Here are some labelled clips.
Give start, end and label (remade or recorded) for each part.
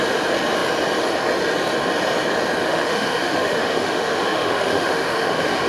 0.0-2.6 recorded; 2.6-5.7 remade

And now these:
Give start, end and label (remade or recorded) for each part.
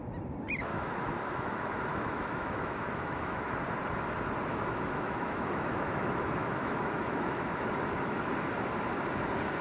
0.0-0.7 recorded; 0.7-3.4 remade; 3.4-4.5 recorded; 4.5-8.3 remade; 8.3-9.6 recorded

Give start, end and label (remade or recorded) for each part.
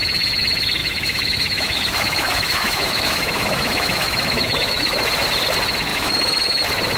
0.0-0.8 recorded; 0.8-5.0 remade; 5.0-5.9 recorded; 5.9-6.6 remade; 6.6-7.0 recorded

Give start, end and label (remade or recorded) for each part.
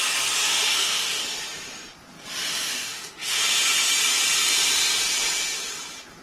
0.0-0.5 recorded; 0.5-1.2 remade; 1.2-2.5 recorded; 2.5-3.4 remade; 3.4-6.2 recorded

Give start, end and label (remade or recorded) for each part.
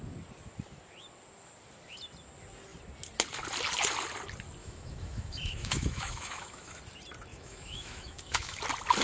0.0-4.6 recorded; 4.6-6.8 remade; 6.8-7.3 recorded; 7.3-8.6 remade; 8.6-9.0 recorded